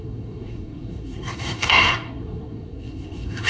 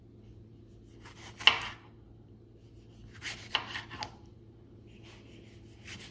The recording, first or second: second